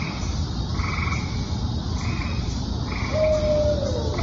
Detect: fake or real real